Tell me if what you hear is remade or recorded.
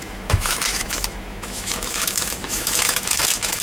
remade